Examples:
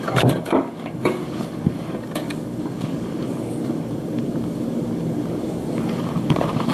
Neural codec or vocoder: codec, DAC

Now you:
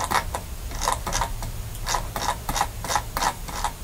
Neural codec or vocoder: none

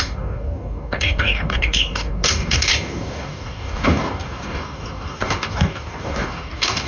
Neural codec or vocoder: codec, DAC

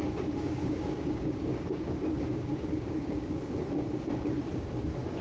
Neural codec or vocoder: codec, DAC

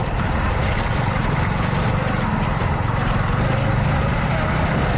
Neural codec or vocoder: none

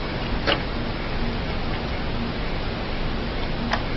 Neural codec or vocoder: none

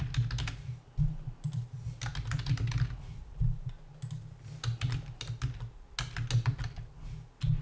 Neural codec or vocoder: none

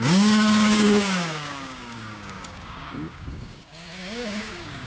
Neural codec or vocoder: codec, DAC